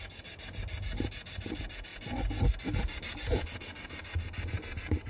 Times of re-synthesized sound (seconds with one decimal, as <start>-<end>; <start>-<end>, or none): none